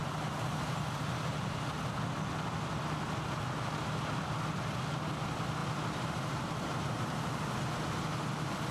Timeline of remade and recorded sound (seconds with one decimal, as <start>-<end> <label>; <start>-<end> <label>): 0.0-1.6 remade; 1.6-5.6 recorded; 5.6-7.3 remade; 7.3-8.7 recorded